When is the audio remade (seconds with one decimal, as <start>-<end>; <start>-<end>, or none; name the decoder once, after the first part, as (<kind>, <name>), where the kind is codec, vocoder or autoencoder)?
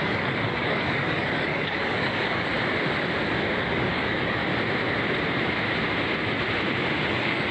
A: 0.0-2.5 (codec, DAC); 3.6-4.4; 7.1-7.5